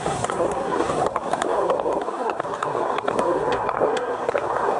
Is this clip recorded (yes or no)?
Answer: no